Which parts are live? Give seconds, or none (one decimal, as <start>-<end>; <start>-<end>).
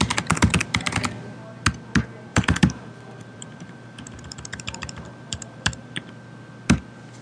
0.0-2.3; 6.1-7.2